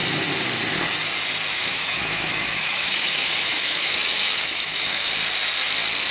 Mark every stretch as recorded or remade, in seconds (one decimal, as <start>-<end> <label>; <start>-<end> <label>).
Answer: 0.0-1.5 recorded; 1.5-5.1 remade; 5.1-6.1 recorded